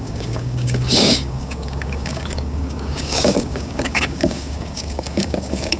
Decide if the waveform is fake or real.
fake